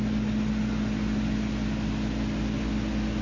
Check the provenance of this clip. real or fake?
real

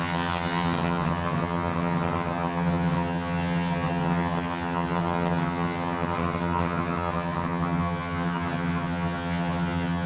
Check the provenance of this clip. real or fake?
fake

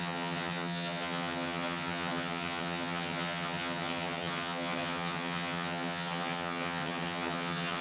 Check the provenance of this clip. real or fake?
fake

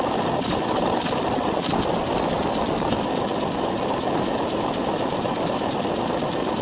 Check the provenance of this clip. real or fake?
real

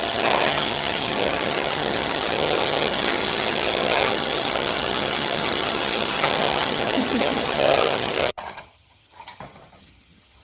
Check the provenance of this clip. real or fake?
fake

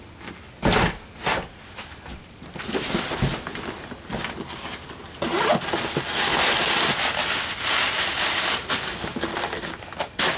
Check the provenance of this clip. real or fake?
real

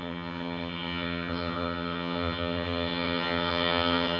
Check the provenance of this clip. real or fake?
fake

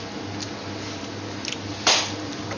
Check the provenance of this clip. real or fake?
real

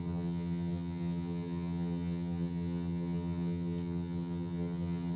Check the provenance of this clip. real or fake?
fake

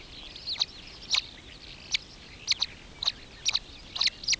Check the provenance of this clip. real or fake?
real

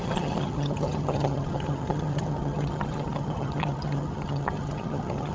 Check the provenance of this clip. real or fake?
fake